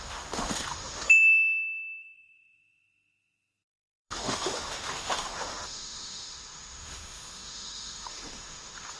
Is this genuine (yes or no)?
no